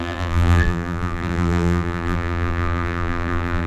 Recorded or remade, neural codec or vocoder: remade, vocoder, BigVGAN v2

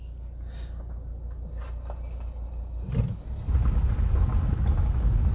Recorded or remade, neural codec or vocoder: recorded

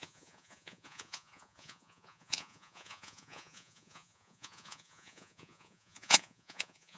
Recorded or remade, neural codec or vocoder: remade, vocoder, Vocos